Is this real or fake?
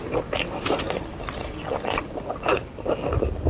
real